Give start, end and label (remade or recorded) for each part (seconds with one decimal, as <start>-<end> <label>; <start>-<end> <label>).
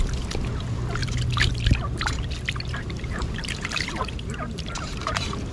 0.0-1.0 recorded; 1.0-2.2 remade; 2.2-2.7 recorded; 2.7-5.5 remade